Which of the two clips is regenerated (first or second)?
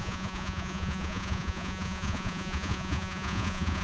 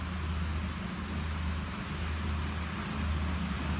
first